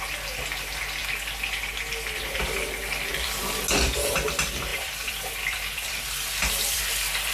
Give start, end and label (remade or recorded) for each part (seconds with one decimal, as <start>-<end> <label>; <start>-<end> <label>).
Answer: 0.0-4.7 recorded; 4.7-6.8 remade; 6.8-7.3 recorded